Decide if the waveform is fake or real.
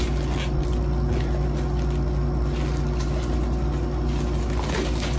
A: real